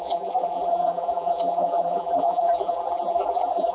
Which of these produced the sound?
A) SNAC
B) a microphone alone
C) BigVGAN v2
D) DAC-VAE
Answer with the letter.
C